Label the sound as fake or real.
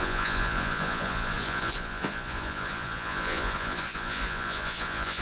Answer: fake